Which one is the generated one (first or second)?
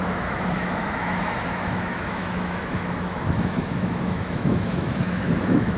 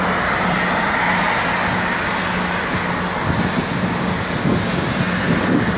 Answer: first